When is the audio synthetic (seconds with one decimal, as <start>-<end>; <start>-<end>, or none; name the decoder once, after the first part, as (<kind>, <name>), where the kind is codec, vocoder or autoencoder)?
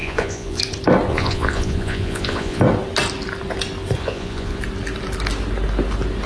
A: 0.0-0.6 (vocoder, Vocos); 1.1-2.6; 4.0-4.6